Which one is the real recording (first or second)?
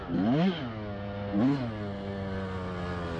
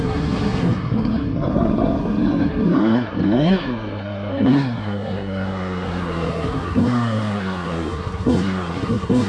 first